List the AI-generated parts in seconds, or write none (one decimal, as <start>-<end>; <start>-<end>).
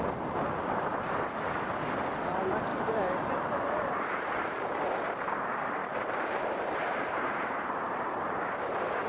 2.7-4.3; 5.8-8.4